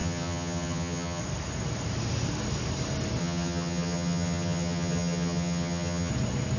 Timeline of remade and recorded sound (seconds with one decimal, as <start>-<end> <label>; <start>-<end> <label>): 0.0-1.2 remade; 1.2-3.2 recorded; 3.2-6.1 remade; 6.1-6.6 recorded